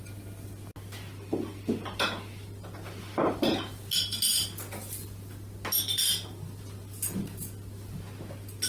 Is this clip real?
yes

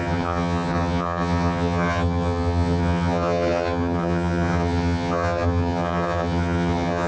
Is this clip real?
no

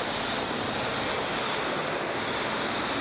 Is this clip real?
yes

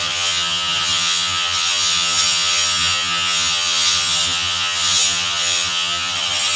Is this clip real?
no